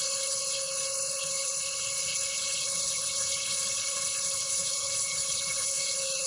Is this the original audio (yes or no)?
no